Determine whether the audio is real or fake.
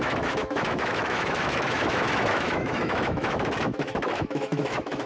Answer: fake